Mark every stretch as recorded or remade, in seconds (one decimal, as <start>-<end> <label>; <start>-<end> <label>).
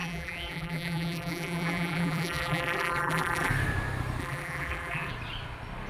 0.0-3.5 remade; 3.5-4.2 recorded; 4.2-5.1 remade; 5.1-5.9 recorded